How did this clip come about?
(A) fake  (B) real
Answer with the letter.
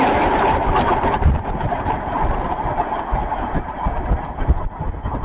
B